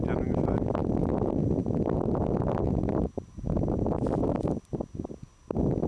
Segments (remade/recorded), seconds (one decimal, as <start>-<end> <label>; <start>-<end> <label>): 0.0-5.9 recorded